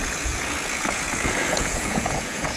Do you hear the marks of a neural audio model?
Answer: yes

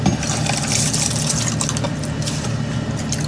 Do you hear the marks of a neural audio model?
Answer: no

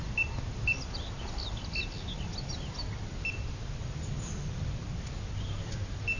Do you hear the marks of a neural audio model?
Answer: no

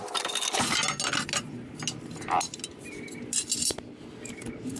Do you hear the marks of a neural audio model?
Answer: no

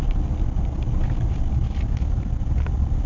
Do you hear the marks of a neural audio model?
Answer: no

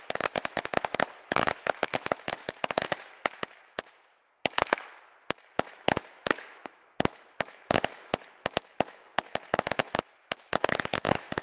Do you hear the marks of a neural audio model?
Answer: yes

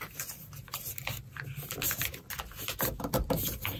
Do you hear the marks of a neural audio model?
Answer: no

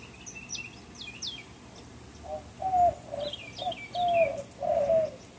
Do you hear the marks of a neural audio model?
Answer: no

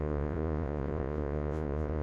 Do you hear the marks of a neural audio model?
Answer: yes